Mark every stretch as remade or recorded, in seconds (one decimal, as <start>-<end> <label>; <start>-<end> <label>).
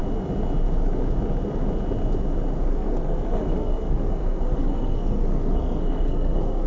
0.0-2.7 recorded; 2.7-6.7 remade